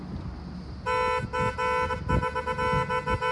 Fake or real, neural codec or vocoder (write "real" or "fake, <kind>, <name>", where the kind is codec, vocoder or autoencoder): real